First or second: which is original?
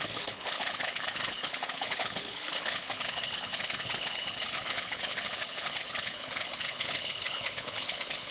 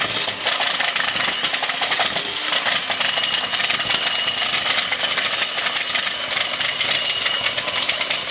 second